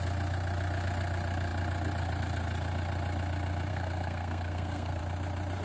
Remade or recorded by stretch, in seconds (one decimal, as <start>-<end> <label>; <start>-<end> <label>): 0.0-3.7 recorded; 3.7-5.0 remade; 5.0-5.6 recorded